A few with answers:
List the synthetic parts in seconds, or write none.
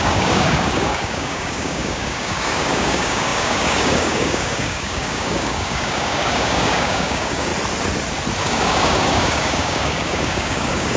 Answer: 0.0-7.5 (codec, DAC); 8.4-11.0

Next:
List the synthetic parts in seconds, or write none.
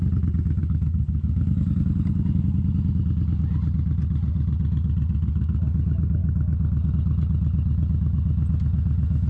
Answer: 0.6-2.4 (codec, DAC)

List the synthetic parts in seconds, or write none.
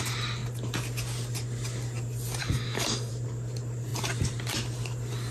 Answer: 2.4-3.1 (codec, DAC)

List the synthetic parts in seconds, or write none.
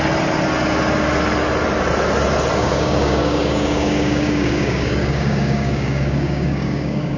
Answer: 2.6-7.2 (codec, DAC)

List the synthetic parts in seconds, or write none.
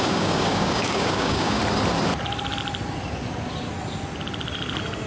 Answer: 0.0-1.6 (codec, DAC)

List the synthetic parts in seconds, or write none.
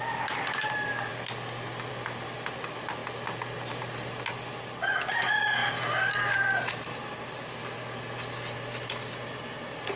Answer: none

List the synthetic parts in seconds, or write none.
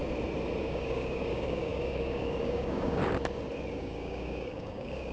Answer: 0.6-3.0 (codec, DAC); 3.7-5.1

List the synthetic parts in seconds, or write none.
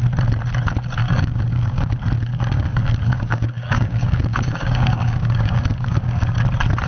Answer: 1.0-1.9 (codec, DAC); 2.3-6.4